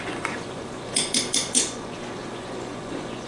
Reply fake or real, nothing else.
fake